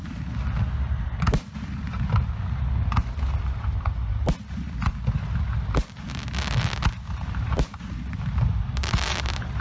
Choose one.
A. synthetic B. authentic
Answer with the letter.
B